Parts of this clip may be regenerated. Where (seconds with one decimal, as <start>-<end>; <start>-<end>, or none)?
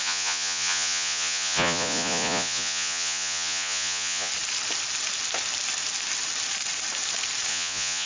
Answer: 0.0-4.3; 7.5-8.1